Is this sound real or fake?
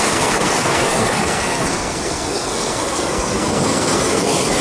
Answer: fake